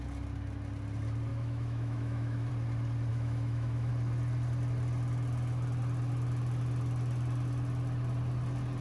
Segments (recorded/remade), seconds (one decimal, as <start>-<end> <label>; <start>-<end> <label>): 0.0-1.3 recorded; 1.3-2.5 remade; 2.5-3.1 recorded; 3.1-3.9 remade; 3.9-8.8 recorded